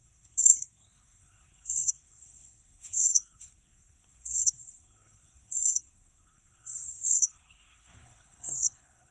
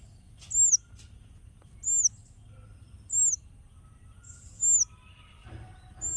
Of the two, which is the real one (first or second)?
second